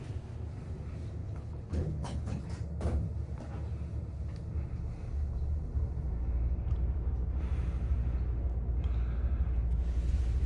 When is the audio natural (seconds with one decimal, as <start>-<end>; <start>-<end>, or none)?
0.0-1.2; 2.4-10.5